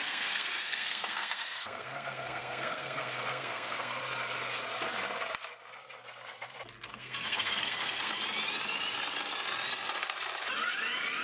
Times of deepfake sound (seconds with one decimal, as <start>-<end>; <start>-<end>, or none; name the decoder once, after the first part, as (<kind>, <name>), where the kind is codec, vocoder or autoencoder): 0.0-4.0 (codec, SNAC); 6.9-8.1